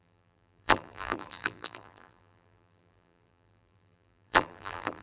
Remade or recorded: remade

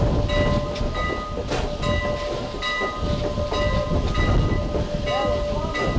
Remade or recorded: recorded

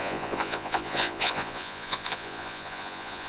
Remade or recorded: remade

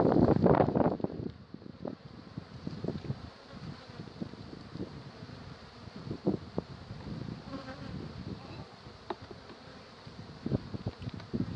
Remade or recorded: remade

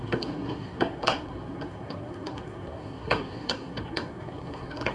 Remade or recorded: remade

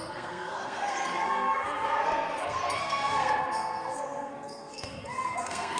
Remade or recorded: remade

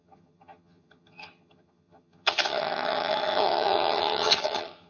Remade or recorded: remade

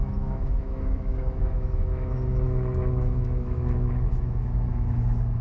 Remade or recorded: remade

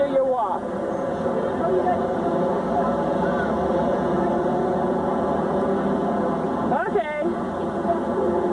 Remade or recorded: recorded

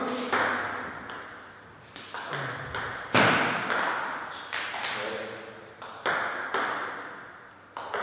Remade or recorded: recorded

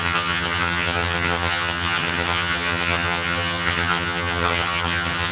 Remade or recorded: remade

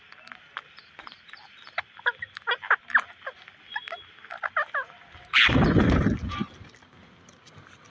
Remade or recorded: recorded